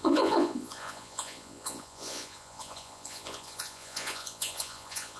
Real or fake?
fake